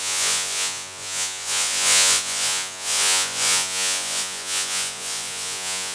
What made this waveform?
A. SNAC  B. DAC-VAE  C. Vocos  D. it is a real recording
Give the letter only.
C